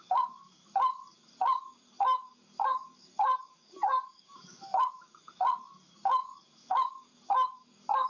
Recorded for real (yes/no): no